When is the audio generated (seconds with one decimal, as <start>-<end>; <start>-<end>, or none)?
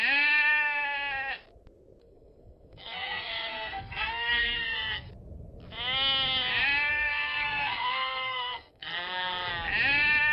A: 2.0-5.1; 6.9-9.5